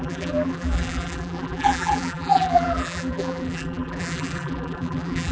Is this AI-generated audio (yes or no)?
yes